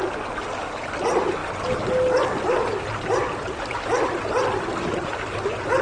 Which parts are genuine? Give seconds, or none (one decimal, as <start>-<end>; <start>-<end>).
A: 0.0-5.8